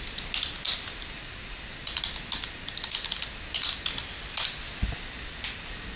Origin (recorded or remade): recorded